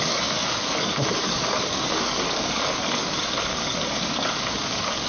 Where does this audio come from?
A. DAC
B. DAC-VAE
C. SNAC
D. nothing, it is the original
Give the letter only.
A